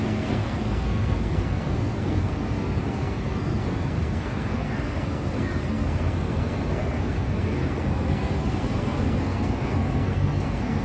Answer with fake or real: fake